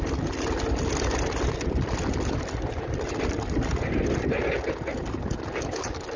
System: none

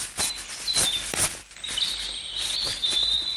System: none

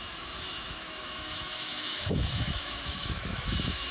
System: autoencoder, DAC-VAE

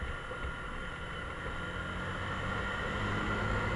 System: none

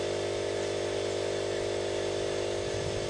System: none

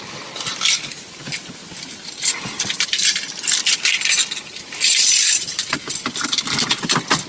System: none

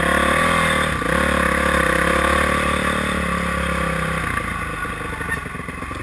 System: none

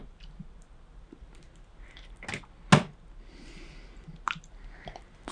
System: none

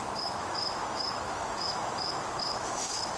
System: autoencoder, DAC-VAE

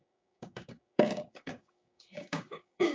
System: codec, DAC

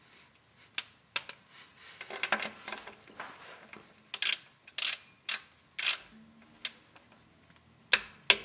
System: none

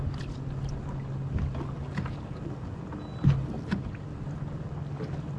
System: none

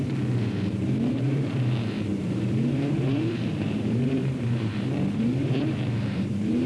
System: vocoder, BigVGAN v2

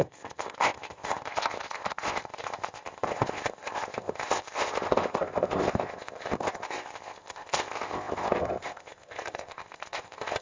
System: codec, ZipCodec